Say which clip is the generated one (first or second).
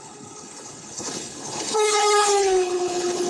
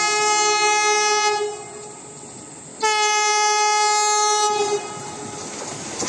first